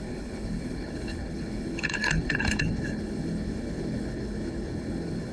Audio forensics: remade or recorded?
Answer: remade